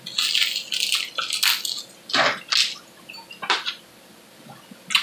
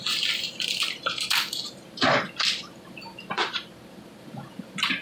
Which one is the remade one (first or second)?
second